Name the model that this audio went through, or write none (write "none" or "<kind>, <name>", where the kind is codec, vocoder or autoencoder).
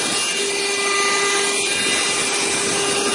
none